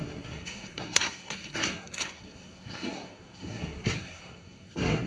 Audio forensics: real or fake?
fake